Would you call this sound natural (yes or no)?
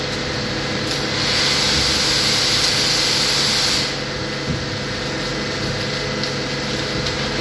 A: yes